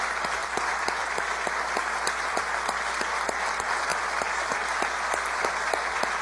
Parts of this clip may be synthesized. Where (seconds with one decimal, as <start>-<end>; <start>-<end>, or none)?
0.4-3.1; 3.9-5.5